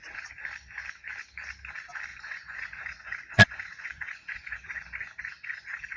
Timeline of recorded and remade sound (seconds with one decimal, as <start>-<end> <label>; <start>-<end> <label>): 0.0-2.1 recorded; 2.1-6.0 remade